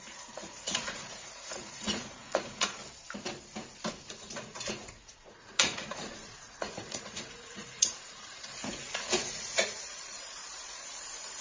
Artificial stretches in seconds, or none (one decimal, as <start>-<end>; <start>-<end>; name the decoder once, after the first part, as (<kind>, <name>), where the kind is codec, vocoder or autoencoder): 0.0-2.8 (vocoder, Vocos); 4.0-11.4